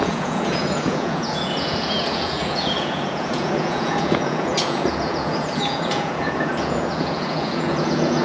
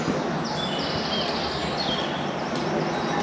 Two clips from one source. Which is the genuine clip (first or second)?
second